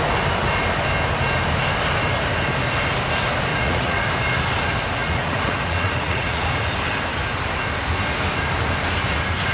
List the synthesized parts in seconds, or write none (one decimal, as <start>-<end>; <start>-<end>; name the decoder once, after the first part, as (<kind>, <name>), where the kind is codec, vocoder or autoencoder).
3.5-4.1 (vocoder, Vocos); 5.0-6.4